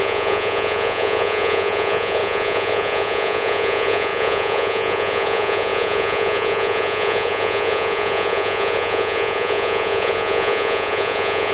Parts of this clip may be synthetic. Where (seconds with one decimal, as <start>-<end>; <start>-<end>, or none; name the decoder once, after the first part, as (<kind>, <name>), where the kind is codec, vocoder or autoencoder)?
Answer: 0.0-11.5 (vocoder, Vocos)